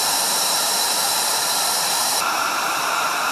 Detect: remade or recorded remade